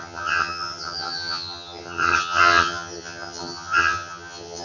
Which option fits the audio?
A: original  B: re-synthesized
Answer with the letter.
B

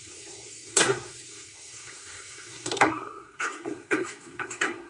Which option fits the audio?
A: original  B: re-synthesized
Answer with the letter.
B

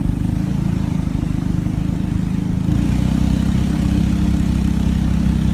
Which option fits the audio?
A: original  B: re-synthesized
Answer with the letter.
A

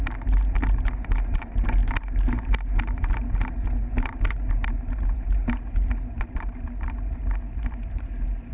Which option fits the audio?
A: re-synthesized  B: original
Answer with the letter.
A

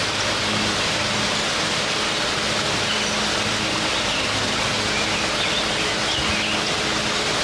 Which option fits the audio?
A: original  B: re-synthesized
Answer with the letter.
A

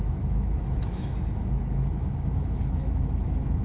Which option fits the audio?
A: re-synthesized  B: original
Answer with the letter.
A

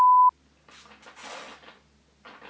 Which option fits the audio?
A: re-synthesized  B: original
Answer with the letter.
B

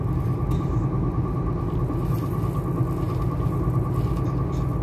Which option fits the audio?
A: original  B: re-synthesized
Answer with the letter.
A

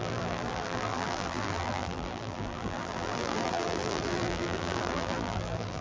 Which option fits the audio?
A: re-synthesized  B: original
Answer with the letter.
A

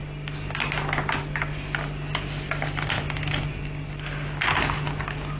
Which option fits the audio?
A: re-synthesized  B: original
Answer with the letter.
B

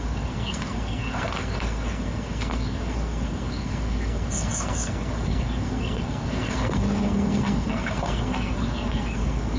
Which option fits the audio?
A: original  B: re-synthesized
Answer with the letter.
B